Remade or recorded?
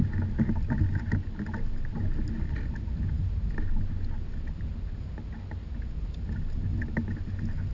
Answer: recorded